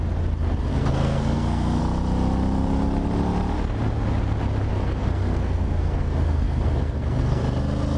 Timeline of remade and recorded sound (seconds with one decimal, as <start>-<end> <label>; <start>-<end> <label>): 0.0-0.7 recorded; 0.7-1.8 remade; 1.8-4.7 recorded; 4.7-7.4 remade; 7.4-8.0 recorded